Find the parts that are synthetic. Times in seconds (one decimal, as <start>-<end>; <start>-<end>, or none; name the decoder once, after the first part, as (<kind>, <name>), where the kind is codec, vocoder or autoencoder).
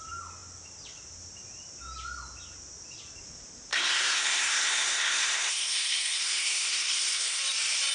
3.7-7.4 (codec, SNAC)